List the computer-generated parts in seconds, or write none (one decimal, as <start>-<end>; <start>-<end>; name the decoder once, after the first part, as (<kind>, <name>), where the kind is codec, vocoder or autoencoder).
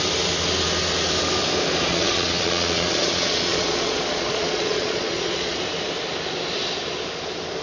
1.9-5.6 (vocoder, Vocos)